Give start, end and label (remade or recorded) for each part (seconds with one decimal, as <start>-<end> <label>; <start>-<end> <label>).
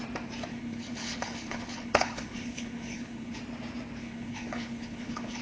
0.0-0.5 recorded; 0.5-3.4 remade; 3.4-4.0 recorded; 4.0-5.4 remade